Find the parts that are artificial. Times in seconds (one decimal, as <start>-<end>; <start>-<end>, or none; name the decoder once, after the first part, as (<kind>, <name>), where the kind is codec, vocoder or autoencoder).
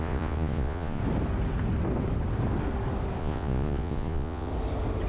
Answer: 0.0-1.0 (vocoder, Vocos); 3.2-4.5